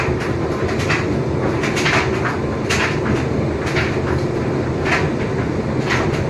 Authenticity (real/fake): real